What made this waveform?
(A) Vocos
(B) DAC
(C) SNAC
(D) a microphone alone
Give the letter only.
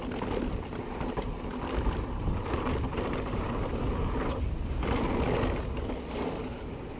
D